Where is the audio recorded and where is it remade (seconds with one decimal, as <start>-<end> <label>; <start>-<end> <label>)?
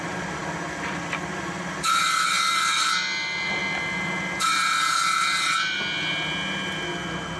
0.0-7.4 recorded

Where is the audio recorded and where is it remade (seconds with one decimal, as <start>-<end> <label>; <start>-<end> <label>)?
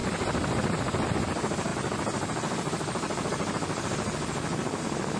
0.0-5.2 recorded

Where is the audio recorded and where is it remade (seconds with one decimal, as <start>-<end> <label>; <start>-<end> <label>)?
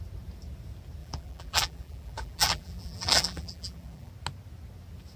0.0-1.0 recorded; 1.0-4.1 remade; 4.1-5.2 recorded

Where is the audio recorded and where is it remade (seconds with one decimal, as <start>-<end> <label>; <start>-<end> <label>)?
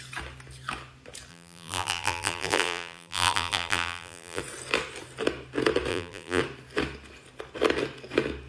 0.0-1.3 recorded; 1.3-4.4 remade; 4.4-5.9 recorded; 5.9-6.4 remade; 6.4-8.5 recorded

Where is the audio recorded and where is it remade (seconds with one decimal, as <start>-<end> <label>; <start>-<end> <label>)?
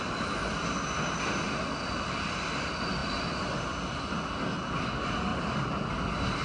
0.0-5.3 recorded; 5.3-6.0 remade; 6.0-6.4 recorded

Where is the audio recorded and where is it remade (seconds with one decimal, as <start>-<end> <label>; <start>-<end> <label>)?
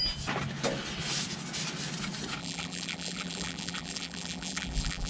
0.0-2.4 recorded; 2.4-5.1 remade